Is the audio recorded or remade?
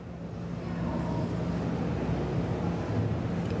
recorded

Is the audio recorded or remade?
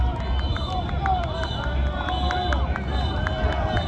recorded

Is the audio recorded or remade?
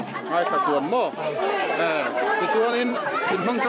remade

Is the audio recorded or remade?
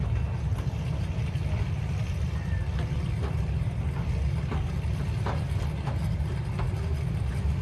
recorded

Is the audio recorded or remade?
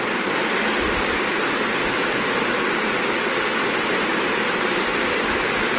recorded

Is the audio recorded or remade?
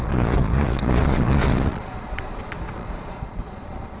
remade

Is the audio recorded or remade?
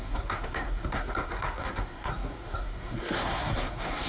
remade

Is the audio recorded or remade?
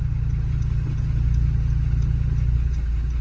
recorded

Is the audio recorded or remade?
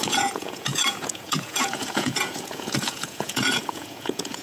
remade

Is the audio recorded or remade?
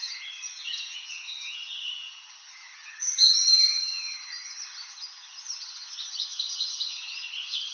remade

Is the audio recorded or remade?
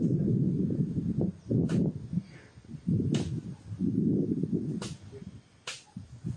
recorded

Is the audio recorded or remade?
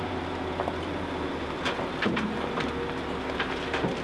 recorded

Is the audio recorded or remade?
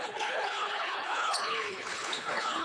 remade